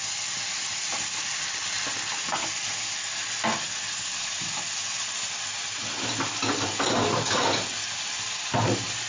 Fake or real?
real